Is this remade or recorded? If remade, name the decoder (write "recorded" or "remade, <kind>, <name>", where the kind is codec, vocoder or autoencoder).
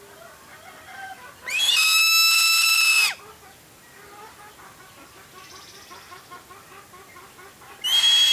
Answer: recorded